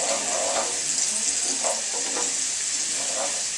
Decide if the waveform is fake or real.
real